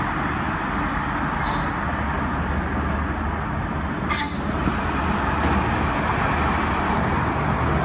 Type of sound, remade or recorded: recorded